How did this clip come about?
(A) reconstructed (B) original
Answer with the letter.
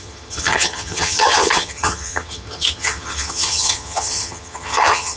A